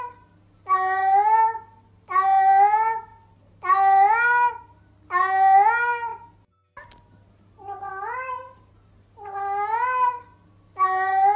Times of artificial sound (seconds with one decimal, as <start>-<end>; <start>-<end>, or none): none